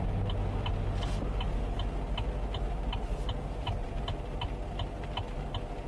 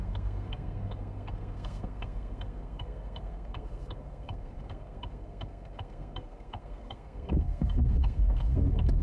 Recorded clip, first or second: first